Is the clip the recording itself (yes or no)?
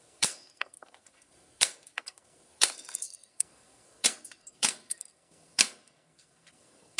no